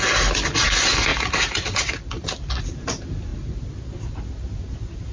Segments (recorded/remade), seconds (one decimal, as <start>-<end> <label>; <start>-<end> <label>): 0.0-5.1 recorded